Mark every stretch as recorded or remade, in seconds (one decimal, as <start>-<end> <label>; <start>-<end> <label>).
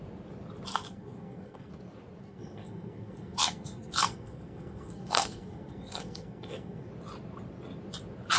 0.0-0.7 recorded; 0.7-1.7 remade; 1.7-2.2 recorded; 2.2-6.9 remade; 6.9-8.4 recorded